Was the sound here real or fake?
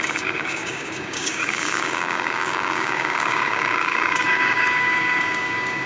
fake